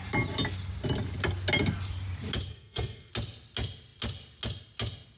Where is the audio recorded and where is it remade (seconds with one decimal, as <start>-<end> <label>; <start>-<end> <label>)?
0.0-2.5 recorded; 2.5-3.1 remade; 3.1-5.2 recorded